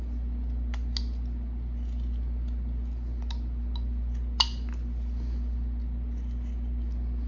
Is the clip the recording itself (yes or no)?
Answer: yes